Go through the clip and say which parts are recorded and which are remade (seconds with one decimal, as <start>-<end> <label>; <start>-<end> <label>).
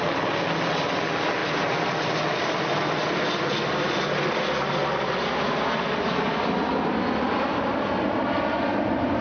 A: 0.0-9.2 recorded